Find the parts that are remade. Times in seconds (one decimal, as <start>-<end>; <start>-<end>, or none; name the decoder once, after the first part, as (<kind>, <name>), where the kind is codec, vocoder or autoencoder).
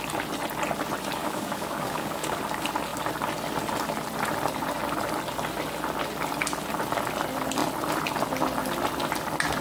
1.2-2.4 (codec, DAC)